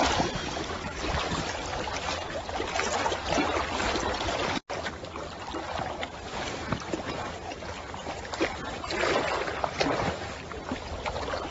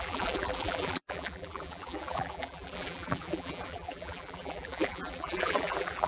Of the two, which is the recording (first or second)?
first